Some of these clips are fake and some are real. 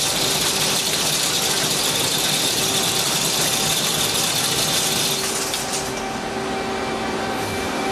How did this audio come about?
real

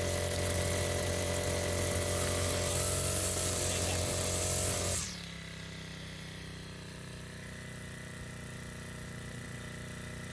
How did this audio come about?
real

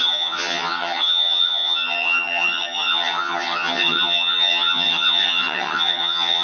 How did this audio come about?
fake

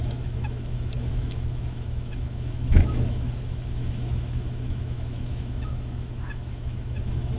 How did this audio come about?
fake